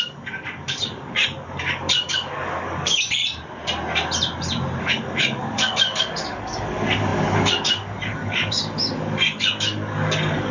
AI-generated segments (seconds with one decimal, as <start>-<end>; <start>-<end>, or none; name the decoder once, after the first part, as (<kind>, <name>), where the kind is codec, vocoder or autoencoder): 0.0-3.2 (codec, DAC); 4.8-10.5